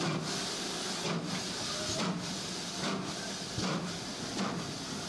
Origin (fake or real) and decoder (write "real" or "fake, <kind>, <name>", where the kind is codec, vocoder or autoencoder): real